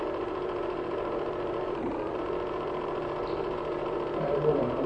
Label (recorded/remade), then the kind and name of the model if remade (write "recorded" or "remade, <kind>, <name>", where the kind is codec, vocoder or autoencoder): remade, vocoder, BigVGAN v2